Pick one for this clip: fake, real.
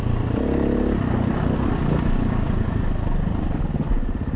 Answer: real